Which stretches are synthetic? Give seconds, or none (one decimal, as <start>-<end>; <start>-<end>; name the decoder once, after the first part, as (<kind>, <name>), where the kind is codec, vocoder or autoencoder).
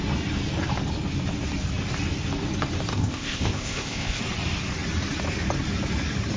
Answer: 2.9-4.2 (codec, ZipCodec)